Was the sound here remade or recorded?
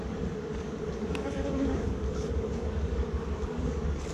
remade